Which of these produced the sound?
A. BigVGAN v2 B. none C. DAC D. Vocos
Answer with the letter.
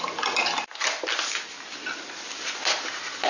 B